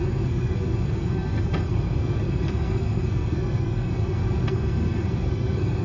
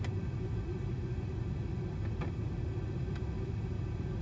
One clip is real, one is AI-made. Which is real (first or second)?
second